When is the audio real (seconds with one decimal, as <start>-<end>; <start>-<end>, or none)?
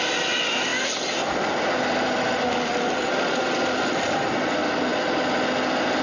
0.0-6.0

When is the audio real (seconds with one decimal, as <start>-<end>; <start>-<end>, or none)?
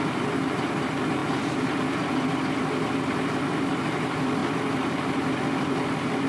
none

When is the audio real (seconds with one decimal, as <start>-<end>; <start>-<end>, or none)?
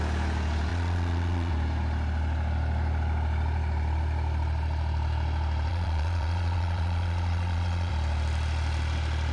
0.0-0.7; 1.5-5.7; 7.9-9.3